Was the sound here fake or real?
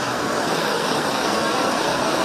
fake